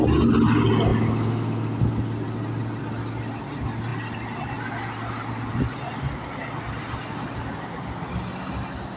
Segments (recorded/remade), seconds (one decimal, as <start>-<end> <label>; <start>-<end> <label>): 0.0-9.0 recorded